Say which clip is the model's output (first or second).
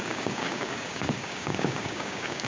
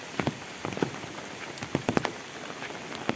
first